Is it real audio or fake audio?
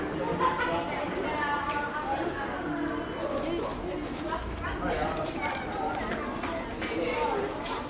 real